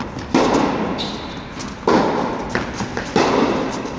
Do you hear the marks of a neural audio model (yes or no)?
no